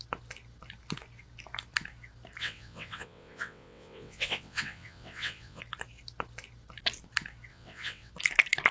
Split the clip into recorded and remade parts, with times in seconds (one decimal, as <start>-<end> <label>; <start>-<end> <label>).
0.0-2.4 recorded; 2.4-5.6 remade; 5.6-7.5 recorded; 7.5-8.1 remade; 8.1-8.7 recorded